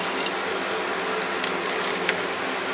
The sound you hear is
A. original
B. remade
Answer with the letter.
A